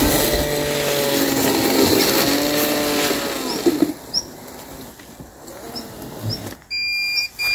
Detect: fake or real real